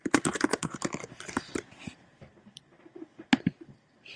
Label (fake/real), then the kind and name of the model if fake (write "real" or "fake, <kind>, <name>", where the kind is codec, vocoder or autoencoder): fake, vocoder, BigVGAN v2